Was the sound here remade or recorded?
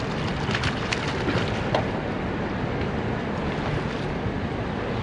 recorded